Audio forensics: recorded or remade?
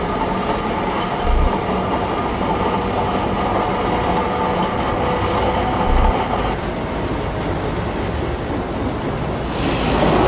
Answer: recorded